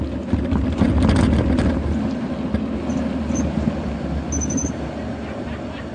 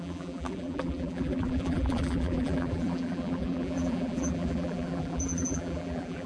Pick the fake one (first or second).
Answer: second